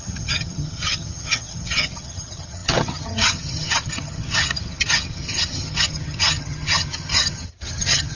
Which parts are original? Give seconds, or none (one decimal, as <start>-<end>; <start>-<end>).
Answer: none